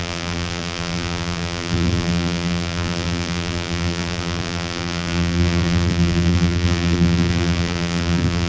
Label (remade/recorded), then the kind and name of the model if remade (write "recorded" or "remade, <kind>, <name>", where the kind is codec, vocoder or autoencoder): remade, vocoder, BigVGAN v2